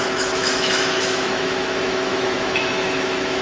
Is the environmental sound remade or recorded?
remade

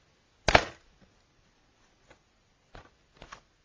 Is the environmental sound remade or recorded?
recorded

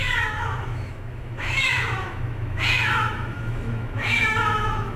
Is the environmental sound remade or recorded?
remade